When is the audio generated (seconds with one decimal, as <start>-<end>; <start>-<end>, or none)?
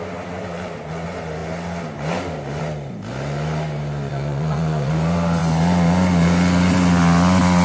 4.1-4.9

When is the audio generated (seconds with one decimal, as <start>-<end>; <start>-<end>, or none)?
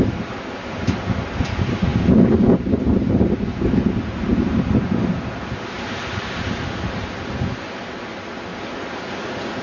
8.5-9.0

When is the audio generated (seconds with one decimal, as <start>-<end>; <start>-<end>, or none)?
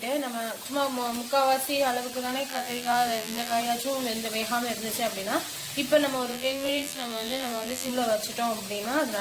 2.5-3.6; 6.3-7.9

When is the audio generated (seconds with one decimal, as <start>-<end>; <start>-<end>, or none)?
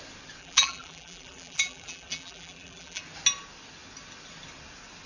0.4-3.0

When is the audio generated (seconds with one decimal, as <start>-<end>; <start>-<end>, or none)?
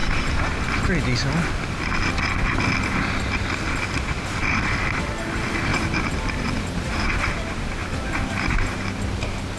5.7-7.1; 7.8-9.0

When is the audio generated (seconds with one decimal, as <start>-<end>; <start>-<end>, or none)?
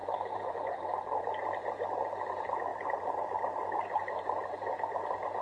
0.0-0.5; 2.7-5.4